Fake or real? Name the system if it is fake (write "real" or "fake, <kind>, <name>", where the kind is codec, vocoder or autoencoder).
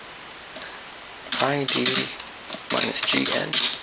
real